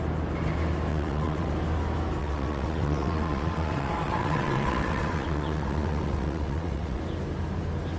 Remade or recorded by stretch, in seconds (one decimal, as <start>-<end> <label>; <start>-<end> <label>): 0.0-0.9 recorded; 0.9-1.5 remade; 1.5-2.2 recorded; 2.2-7.0 remade; 7.0-8.0 recorded